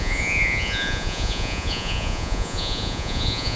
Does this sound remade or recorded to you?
remade